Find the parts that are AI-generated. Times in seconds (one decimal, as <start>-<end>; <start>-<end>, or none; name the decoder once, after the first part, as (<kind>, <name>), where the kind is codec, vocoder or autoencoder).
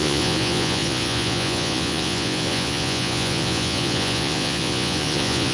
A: 0.0-5.5 (vocoder, Vocos)